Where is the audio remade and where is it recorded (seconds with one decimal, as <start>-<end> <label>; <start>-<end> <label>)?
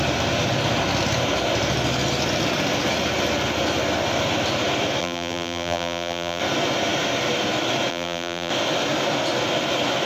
0.0-5.0 recorded; 5.0-6.4 remade; 6.4-7.9 recorded; 7.9-8.5 remade; 8.5-10.1 recorded